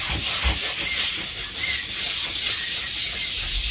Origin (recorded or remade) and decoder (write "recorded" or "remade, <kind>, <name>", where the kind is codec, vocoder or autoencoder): recorded